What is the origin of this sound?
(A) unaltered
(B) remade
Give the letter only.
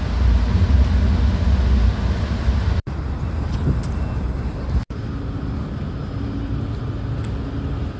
A